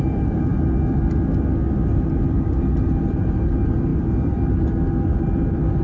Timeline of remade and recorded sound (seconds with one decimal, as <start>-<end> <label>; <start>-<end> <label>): 0.0-0.5 remade; 0.5-1.9 recorded; 1.9-5.8 remade